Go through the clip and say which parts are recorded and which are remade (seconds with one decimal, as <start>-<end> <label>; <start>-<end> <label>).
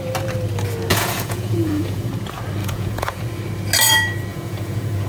0.0-0.9 recorded; 0.9-2.1 remade; 2.1-2.6 recorded; 2.6-3.2 remade; 3.2-4.3 recorded; 4.3-5.1 remade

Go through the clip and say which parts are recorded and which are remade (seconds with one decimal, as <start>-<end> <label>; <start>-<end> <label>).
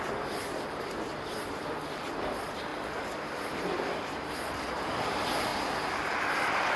0.0-2.7 recorded; 2.7-4.9 remade; 4.9-6.8 recorded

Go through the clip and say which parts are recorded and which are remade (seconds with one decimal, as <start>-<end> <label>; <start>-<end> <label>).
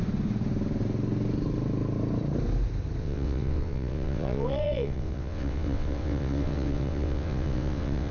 0.0-3.0 recorded; 3.0-8.1 remade